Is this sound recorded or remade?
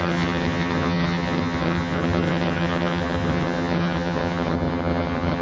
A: remade